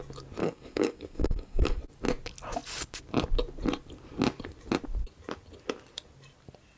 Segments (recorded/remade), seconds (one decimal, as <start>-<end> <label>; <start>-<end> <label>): 0.0-0.4 recorded; 0.4-1.8 remade; 1.8-6.8 recorded